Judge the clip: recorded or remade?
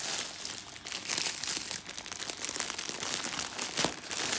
recorded